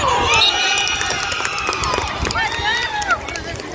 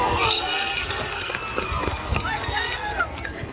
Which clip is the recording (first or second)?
first